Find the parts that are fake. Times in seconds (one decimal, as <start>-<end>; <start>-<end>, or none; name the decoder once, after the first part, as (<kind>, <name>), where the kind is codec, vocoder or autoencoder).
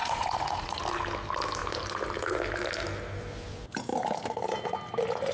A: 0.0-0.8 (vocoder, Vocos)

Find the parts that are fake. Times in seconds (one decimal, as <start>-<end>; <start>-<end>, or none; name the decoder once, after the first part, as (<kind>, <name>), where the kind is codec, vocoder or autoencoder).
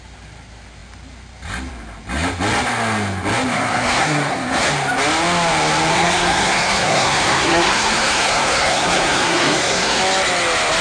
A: 3.5-4.7 (codec, SNAC); 5.9-10.0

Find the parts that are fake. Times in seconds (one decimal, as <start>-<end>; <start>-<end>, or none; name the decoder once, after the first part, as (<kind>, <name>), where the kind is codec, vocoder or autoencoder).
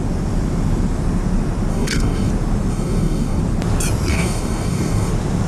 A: 1.7-2.3 (codec, DAC); 2.7-3.4; 4.1-5.1